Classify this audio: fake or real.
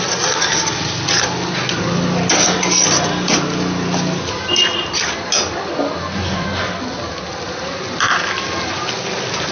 real